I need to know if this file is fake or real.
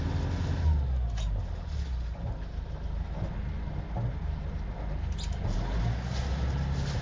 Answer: real